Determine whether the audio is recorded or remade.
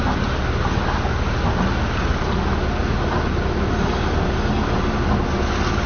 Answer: recorded